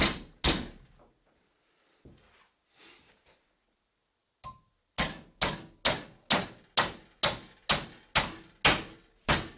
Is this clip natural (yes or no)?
yes